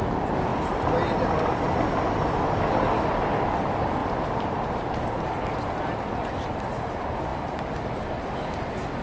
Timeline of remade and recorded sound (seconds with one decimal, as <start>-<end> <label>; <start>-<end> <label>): 0.0-4.0 recorded; 4.0-5.3 remade; 5.3-9.0 recorded